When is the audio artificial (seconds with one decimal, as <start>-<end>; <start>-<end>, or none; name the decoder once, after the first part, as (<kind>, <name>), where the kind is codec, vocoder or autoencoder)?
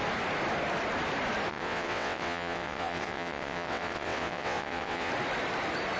1.5-5.1 (vocoder, WaveNeXt)